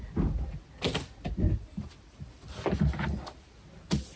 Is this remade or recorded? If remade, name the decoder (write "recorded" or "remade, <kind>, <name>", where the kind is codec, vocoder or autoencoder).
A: recorded